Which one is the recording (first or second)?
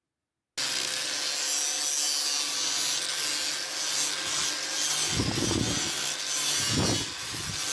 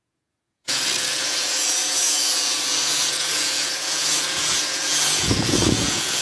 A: first